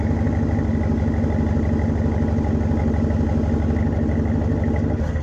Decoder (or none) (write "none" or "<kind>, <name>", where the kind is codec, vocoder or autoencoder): none